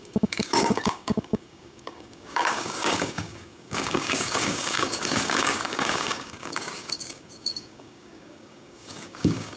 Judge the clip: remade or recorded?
remade